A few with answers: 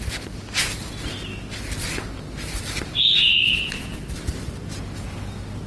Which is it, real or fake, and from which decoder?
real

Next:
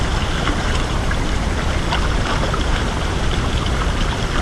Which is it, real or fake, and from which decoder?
real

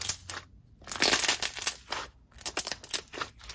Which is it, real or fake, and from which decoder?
real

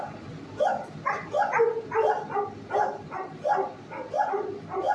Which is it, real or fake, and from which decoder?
real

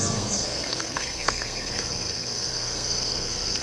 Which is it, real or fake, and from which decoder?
fake, codec, SNAC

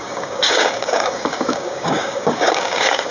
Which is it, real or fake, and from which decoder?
fake, codec, DAC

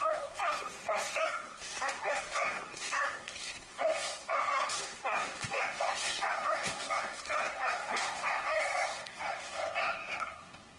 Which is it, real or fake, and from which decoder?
fake, codec, SNAC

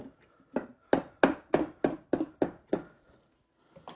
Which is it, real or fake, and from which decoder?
real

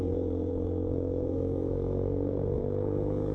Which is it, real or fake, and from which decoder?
fake, codec, SNAC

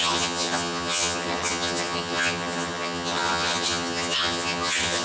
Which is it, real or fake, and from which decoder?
fake, vocoder, HiFi-GAN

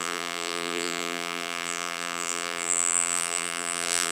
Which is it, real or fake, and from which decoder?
fake, vocoder, BigVGAN v2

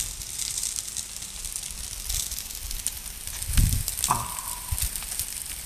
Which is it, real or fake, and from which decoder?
fake, vocoder, BigVGAN v2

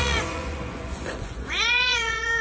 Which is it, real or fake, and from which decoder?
fake, vocoder, Vocos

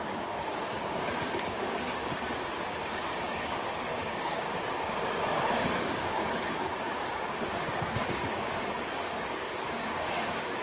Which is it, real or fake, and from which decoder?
fake, codec, DAC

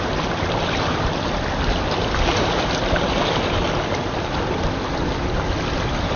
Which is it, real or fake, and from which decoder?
real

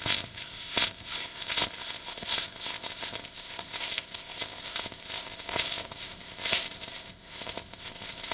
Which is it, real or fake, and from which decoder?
fake, codec, ZipCodec